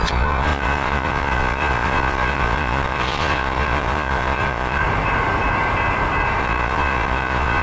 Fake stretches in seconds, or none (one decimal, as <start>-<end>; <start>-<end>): 0.0-4.8; 6.4-7.6